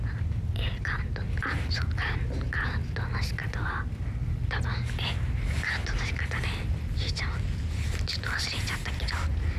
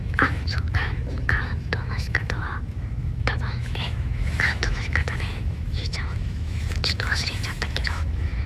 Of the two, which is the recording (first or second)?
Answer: first